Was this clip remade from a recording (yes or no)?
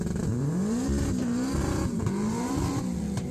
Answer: no